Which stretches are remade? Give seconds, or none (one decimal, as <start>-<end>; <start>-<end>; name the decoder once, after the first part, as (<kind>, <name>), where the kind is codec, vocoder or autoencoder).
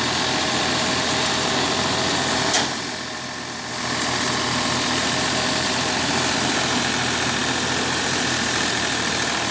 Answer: none